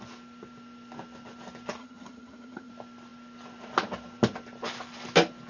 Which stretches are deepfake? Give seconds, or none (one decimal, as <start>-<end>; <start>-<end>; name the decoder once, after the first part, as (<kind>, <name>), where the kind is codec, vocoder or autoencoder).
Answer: 1.8-2.7 (vocoder, HiFi-GAN)